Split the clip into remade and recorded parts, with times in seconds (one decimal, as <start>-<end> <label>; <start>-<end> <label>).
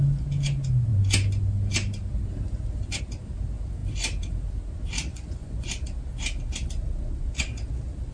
0.0-5.1 recorded; 5.1-5.7 remade; 5.7-8.1 recorded